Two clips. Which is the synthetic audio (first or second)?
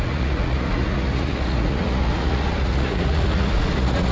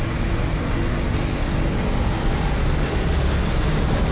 first